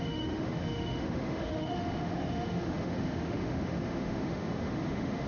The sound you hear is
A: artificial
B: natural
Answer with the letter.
A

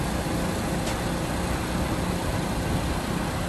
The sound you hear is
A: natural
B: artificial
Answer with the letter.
A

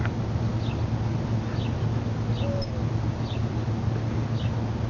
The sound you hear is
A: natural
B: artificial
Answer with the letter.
A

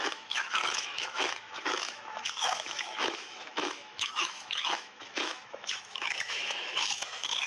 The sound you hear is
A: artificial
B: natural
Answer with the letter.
A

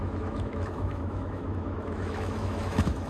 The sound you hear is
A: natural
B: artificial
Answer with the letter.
B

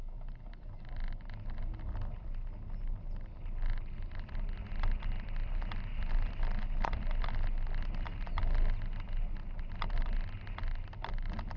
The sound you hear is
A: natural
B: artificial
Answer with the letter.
A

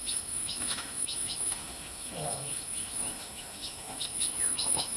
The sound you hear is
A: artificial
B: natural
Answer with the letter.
A